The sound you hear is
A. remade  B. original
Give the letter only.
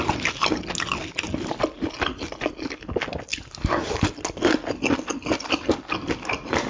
B